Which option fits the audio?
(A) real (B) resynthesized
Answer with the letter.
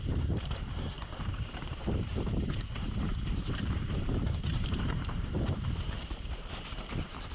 B